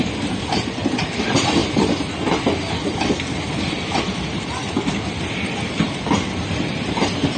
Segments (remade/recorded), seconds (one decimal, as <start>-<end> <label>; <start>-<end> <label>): 0.0-1.6 remade; 1.6-4.0 recorded; 4.0-7.4 remade